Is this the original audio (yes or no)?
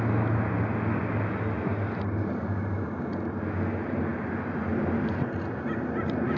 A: yes